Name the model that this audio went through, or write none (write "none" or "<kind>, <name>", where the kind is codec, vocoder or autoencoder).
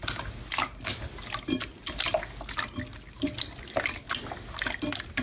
none